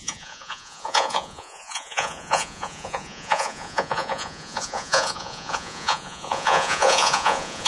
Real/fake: fake